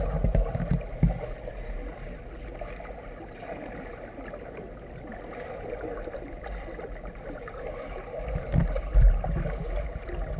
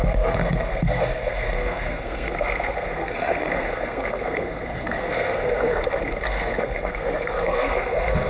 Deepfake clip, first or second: second